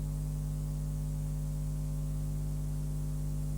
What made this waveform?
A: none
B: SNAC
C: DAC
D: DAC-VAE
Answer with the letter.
A